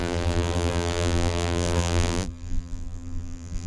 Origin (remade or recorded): remade